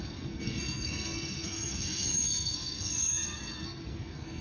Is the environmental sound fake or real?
fake